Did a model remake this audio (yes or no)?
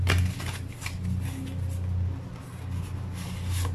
no